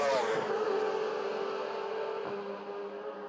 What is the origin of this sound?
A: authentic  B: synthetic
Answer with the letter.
A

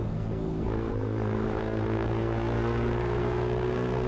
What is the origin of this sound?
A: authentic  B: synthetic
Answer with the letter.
B